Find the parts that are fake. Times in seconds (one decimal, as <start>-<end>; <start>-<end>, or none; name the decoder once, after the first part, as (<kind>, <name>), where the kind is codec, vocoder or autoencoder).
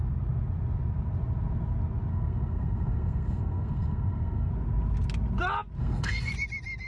2.1-4.5 (codec, SNAC); 5.8-6.3